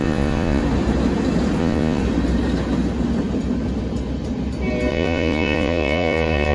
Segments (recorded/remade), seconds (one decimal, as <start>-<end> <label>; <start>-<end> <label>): 0.0-0.6 remade; 0.6-1.6 recorded; 1.6-2.0 remade; 2.0-4.9 recorded; 4.9-6.5 remade